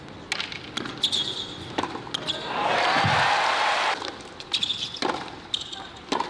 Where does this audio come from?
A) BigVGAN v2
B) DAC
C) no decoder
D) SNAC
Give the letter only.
C